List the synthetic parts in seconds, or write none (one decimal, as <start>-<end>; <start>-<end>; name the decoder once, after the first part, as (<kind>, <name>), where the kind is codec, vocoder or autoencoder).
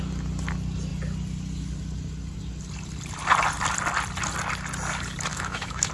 5.3-5.9 (autoencoder, DAC-VAE)